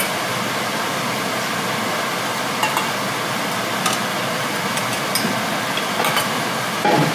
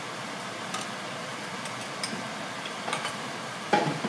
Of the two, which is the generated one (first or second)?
second